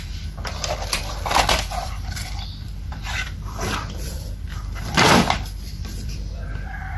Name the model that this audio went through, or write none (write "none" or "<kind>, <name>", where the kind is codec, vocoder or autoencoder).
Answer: vocoder, BigVGAN v2